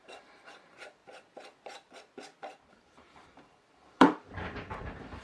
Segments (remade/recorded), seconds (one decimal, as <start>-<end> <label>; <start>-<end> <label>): 0.0-1.0 remade; 1.0-2.7 recorded; 2.7-5.2 remade